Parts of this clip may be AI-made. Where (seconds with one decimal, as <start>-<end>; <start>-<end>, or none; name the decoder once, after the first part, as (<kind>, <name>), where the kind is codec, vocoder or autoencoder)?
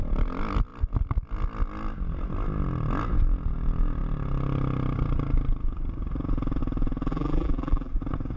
7.1-7.9 (vocoder, BigVGAN v2)